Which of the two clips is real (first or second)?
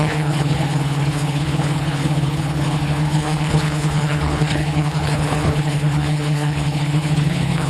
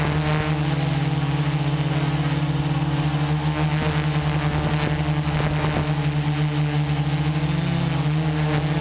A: second